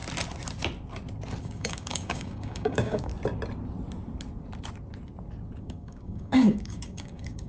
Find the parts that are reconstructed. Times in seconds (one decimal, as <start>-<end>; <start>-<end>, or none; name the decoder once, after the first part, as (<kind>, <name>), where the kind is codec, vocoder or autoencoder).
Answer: 1.4-3.1 (codec, DAC); 5.6-7.5